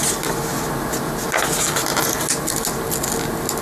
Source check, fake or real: real